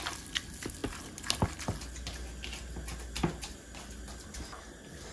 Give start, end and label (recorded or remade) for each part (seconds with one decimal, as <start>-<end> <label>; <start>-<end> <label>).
0.0-5.1 recorded